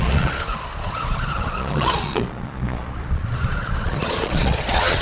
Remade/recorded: remade